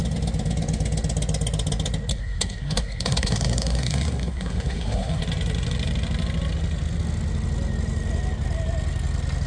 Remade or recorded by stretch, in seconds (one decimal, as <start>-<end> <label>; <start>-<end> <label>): 0.0-2.1 recorded; 2.1-5.2 remade; 5.2-9.5 recorded